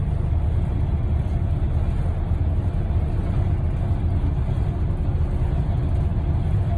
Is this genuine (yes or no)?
yes